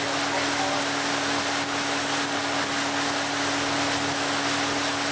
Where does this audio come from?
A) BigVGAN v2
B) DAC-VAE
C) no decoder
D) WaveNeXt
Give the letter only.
C